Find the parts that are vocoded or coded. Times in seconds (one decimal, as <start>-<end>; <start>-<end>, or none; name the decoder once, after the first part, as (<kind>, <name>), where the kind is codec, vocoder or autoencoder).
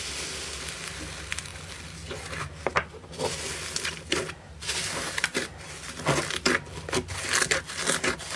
none